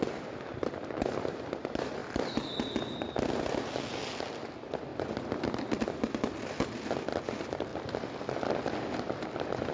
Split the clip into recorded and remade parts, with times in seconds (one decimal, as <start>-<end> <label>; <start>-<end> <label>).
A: 0.0-9.7 recorded